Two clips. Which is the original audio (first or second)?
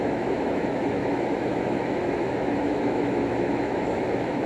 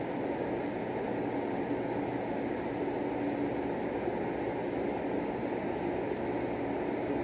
second